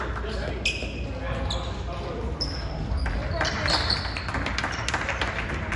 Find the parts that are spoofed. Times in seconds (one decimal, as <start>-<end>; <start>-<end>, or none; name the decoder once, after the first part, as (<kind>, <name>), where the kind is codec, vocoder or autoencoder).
none